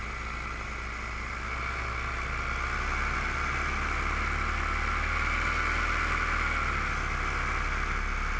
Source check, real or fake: real